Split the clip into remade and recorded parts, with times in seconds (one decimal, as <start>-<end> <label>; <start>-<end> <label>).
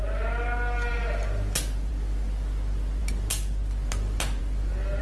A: 0.0-5.0 recorded